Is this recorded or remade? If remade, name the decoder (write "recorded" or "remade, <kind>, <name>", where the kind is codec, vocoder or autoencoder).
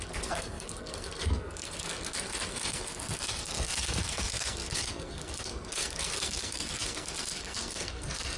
remade, codec, SNAC